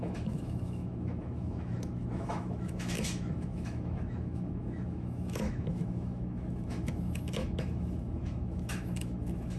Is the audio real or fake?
fake